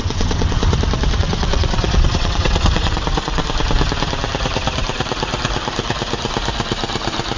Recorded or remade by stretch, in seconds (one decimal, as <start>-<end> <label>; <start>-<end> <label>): 0.0-0.6 remade; 0.6-1.2 recorded; 1.2-3.4 remade; 3.4-7.4 recorded